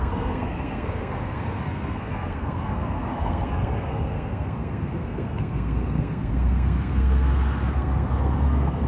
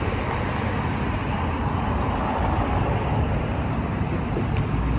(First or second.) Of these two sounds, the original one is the second